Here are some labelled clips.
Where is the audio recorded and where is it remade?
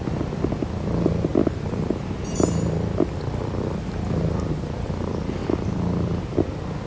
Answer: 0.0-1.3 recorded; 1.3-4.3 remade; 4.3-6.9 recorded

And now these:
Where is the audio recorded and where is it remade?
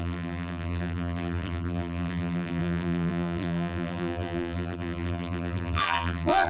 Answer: 0.0-6.5 remade